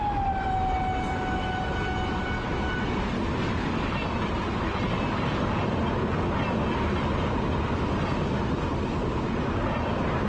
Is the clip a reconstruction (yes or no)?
no